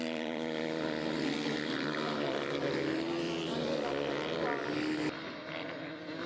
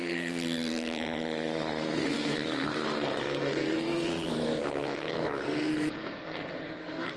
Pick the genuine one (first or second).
first